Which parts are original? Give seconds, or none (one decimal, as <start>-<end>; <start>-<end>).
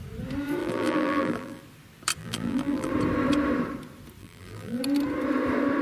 0.0-0.6; 1.6-2.2; 2.9-4.2; 4.8-5.8